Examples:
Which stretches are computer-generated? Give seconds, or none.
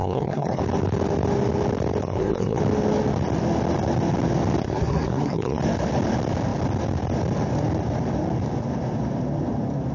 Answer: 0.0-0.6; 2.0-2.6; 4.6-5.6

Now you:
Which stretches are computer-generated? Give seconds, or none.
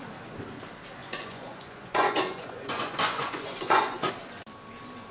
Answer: 1.0-4.1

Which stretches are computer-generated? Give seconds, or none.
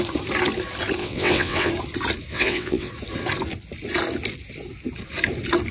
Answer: 1.0-1.7; 2.3-2.9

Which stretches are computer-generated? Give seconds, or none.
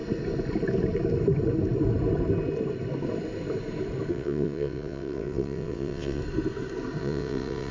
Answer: 4.1-6.2; 7.0-7.7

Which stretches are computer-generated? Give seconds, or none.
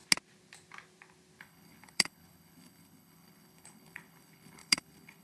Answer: 1.4-5.2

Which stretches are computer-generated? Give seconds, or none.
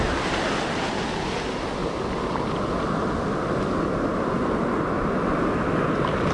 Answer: none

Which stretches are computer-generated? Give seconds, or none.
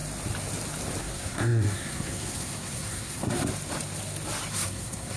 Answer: 1.0-3.4; 4.5-5.2